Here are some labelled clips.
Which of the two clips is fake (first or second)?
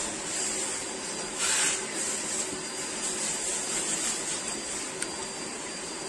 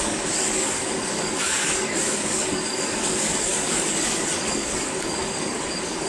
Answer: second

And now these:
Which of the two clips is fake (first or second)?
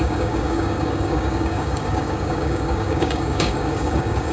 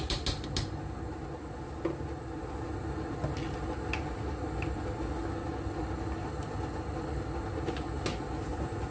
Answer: first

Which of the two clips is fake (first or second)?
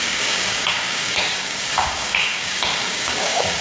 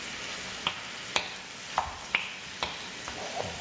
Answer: first